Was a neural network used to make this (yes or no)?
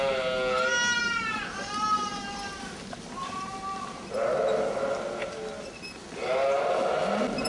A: no